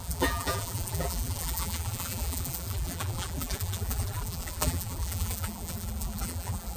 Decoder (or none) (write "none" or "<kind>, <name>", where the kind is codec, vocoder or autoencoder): vocoder, BigVGAN v2